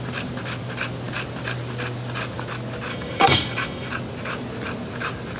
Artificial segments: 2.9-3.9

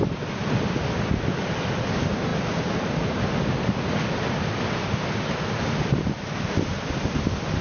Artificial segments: none

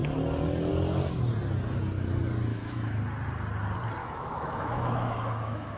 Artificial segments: 2.5-3.0; 4.0-5.8

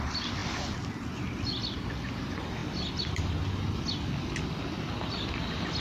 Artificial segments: none

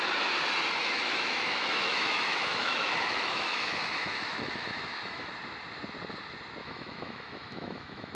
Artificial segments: 0.8-5.3; 6.6-8.1

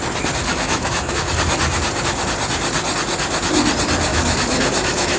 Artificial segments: 0.5-1.3; 4.1-5.2

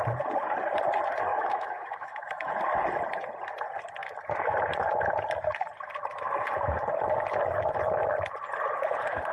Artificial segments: 1.3-2.5